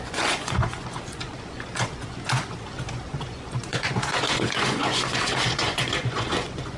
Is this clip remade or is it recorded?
remade